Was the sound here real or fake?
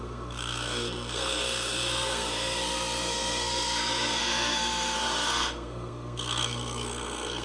fake